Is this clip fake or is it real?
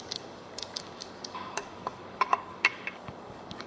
fake